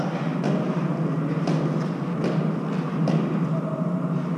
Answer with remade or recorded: recorded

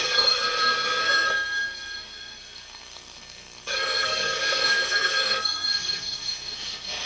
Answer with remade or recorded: remade